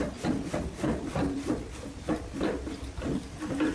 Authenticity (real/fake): real